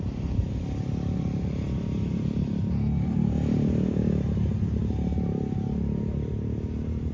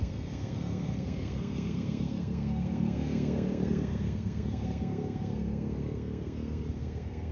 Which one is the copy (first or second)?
second